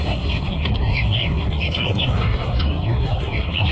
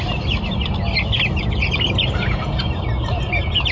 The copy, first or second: first